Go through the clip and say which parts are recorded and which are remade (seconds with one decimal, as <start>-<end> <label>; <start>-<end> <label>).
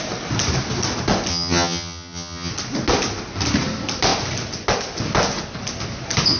0.0-1.3 recorded; 1.3-2.5 remade; 2.5-6.4 recorded